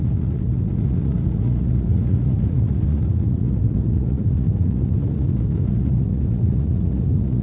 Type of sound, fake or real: fake